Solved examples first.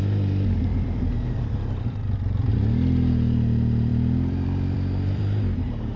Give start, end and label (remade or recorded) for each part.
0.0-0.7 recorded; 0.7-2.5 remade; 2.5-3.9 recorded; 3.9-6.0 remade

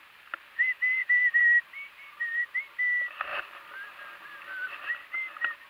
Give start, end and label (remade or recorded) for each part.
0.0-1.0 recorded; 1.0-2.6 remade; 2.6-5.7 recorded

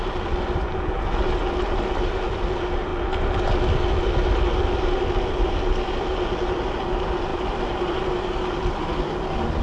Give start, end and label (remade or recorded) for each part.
0.0-7.3 recorded; 7.3-9.0 remade; 9.0-9.6 recorded

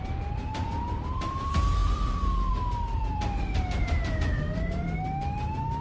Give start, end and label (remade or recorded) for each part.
0.0-5.8 recorded

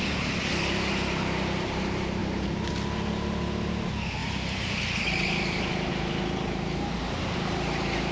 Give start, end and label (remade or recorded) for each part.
0.0-2.2 recorded; 2.2-2.7 remade; 2.7-8.1 recorded

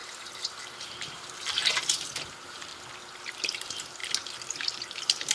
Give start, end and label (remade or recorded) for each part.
0.0-2.7 remade; 2.7-3.3 recorded; 3.3-4.0 remade; 4.0-4.5 recorded; 4.5-5.3 remade

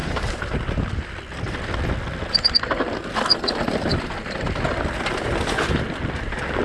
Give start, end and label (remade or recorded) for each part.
0.0-0.6 remade; 0.6-6.6 recorded

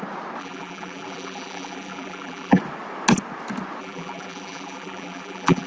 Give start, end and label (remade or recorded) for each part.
0.0-0.4 recorded; 0.4-2.6 remade; 2.6-3.8 recorded; 3.8-5.7 remade